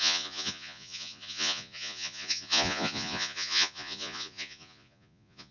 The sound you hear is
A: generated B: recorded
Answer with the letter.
A